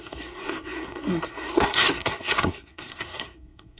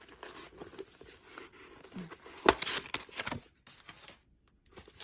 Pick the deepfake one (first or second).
first